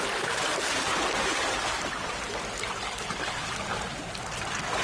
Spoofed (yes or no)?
no